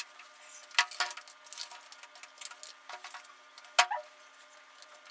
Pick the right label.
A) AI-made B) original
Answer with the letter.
B